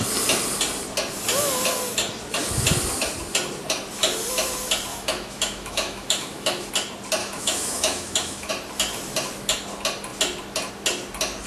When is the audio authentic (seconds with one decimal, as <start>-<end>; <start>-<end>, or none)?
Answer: 0.0-4.9; 6.7-7.2; 8.5-11.5